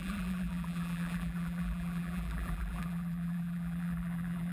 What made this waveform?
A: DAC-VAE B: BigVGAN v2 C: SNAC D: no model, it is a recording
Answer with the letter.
B